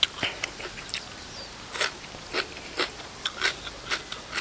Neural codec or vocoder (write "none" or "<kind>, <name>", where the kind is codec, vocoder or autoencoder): none